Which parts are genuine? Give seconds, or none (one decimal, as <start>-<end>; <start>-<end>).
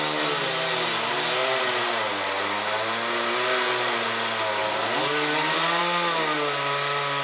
0.0-7.2